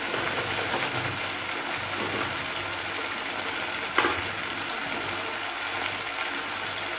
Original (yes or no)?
yes